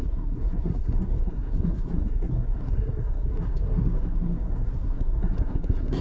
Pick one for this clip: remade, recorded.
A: remade